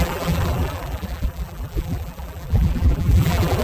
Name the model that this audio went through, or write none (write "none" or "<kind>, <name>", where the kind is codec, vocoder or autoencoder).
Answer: vocoder, BigVGAN v2